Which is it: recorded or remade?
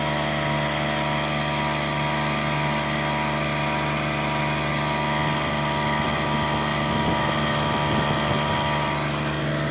recorded